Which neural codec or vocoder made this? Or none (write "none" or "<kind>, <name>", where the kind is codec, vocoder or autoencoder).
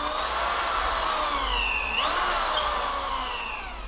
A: none